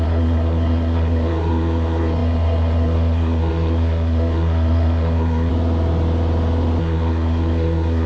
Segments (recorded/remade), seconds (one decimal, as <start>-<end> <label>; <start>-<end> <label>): 0.0-5.5 remade; 5.5-6.8 recorded; 6.8-8.1 remade